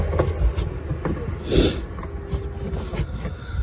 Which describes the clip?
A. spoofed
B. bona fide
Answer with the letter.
B